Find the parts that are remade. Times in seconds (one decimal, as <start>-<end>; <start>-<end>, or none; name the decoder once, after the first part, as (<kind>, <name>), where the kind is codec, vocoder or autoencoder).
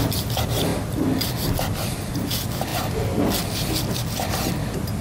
none